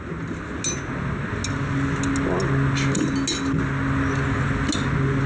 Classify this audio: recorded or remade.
recorded